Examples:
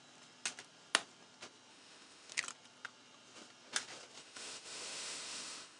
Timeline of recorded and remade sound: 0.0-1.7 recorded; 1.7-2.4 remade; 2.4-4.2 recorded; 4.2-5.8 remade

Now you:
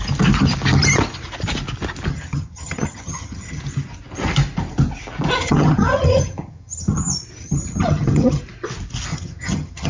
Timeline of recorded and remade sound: 0.0-2.1 recorded; 2.1-3.6 remade; 3.6-5.4 recorded; 5.4-7.0 remade; 7.0-7.4 recorded; 7.4-8.4 remade; 8.4-9.1 recorded; 9.1-9.9 remade

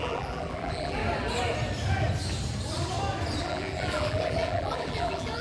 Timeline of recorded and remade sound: 0.0-1.0 remade; 1.0-3.4 recorded; 3.4-5.4 remade

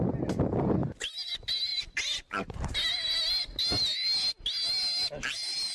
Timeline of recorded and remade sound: 0.0-5.7 recorded

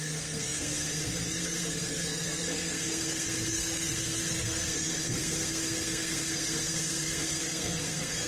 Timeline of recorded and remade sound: 0.0-8.3 remade